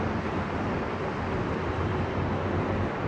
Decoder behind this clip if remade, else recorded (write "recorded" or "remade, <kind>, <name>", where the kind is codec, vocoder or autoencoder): recorded